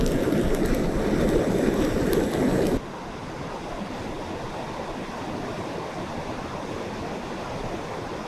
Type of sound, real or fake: real